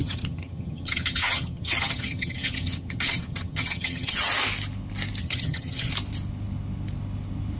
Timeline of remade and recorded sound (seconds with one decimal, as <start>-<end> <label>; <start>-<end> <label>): 0.0-4.3 remade; 4.3-5.2 recorded; 5.2-5.9 remade; 5.9-7.6 recorded